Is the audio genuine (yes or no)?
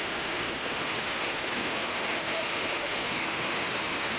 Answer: no